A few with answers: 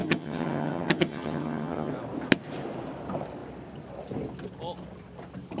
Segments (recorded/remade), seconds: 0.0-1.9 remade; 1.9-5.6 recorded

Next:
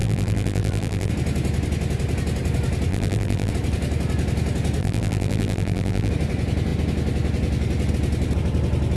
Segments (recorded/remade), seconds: 0.0-1.1 remade; 1.1-2.9 recorded; 2.9-3.5 remade; 3.5-4.8 recorded; 4.8-6.1 remade; 6.1-9.0 recorded

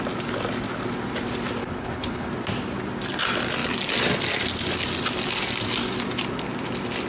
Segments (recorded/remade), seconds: 0.0-1.6 recorded; 1.6-2.3 remade; 2.3-7.1 recorded

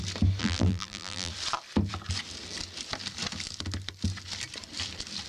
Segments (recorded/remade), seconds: 0.0-0.4 recorded; 0.4-1.3 remade; 1.3-5.3 recorded

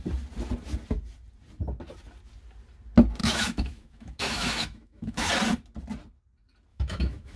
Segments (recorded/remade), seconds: 0.0-3.2 recorded; 3.2-5.3 remade; 5.3-6.7 recorded; 6.7-7.4 remade

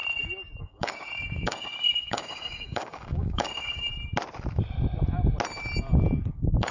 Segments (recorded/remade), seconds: 0.0-0.6 recorded; 0.6-3.9 remade; 3.9-6.3 recorded; 6.3-6.7 remade